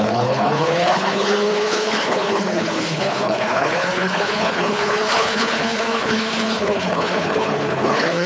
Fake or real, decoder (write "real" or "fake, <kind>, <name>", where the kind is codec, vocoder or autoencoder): fake, codec, HILCodec